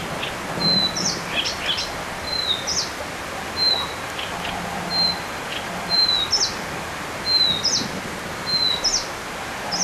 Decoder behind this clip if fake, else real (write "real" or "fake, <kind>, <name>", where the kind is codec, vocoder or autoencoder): real